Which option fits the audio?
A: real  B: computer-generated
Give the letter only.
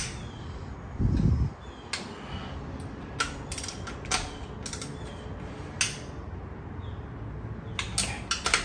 A